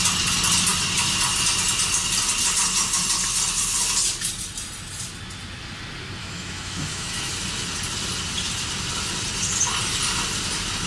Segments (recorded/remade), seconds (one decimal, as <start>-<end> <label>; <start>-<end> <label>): 0.0-6.2 recorded; 6.2-7.3 remade; 7.3-10.9 recorded